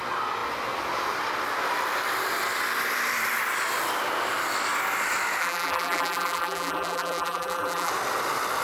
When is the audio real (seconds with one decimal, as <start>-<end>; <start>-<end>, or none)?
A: 0.0-5.4; 7.9-8.6